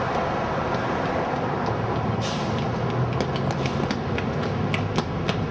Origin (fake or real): real